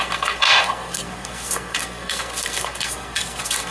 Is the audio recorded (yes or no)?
no